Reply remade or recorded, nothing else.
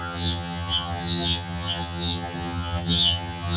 remade